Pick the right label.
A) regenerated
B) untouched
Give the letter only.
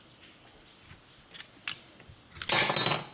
B